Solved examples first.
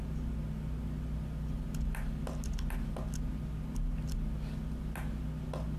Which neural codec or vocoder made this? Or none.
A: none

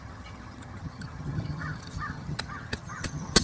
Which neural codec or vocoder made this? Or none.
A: vocoder, HiFi-GAN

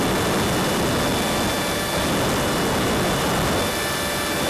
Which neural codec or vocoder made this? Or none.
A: none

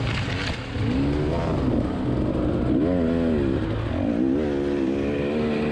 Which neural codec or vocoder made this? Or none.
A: none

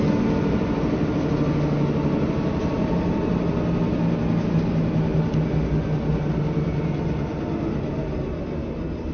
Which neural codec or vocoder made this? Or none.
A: none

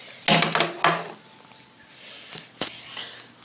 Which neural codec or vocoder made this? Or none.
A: none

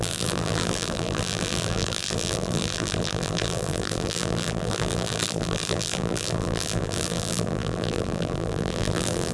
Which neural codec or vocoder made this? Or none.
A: vocoder, BigVGAN v2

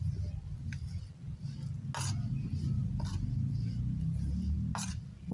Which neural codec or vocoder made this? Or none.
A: none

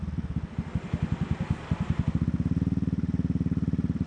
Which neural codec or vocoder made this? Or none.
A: none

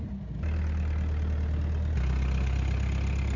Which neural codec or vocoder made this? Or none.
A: none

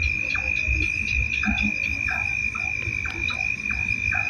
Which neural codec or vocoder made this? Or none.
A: none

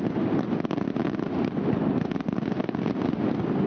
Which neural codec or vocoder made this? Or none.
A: none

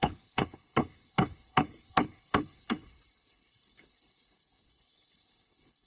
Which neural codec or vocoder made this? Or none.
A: codec, HILCodec